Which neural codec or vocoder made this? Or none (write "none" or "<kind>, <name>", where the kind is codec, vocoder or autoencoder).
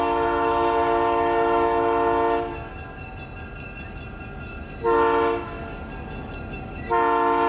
none